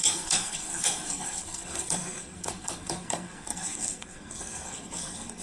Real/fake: fake